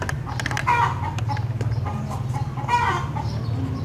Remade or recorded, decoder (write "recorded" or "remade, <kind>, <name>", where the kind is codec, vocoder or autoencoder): recorded